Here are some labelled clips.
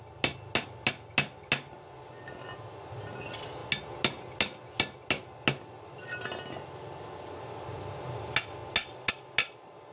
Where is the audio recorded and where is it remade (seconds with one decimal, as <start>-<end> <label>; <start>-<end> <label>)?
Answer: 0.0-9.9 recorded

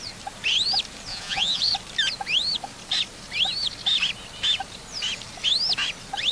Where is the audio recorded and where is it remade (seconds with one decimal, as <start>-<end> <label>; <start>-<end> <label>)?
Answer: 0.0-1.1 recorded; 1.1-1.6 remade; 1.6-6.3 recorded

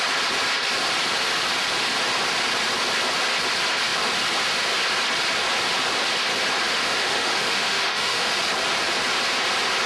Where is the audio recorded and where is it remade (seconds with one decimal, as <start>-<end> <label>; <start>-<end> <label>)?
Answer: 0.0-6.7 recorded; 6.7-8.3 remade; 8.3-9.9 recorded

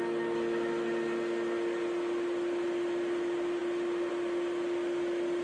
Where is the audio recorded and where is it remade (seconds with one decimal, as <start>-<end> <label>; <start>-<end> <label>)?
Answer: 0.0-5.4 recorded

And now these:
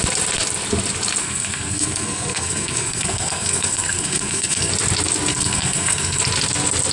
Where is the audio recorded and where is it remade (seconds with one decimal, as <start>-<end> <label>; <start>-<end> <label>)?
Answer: 0.0-1.2 recorded; 1.2-4.7 remade; 4.7-5.3 recorded; 5.3-6.2 remade; 6.2-6.9 recorded

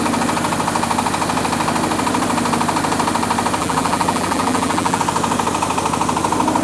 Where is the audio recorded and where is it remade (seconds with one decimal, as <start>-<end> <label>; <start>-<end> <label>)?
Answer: 0.0-3.6 recorded; 3.6-5.0 remade; 5.0-6.6 recorded